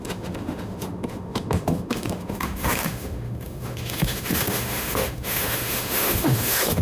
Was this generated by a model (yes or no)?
yes